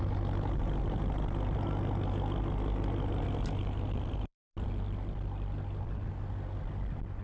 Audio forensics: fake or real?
real